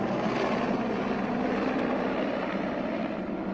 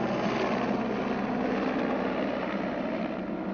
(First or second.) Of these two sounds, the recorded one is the second